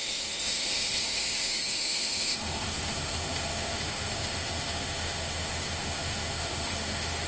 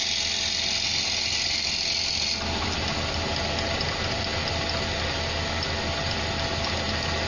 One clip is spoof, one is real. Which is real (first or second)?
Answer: second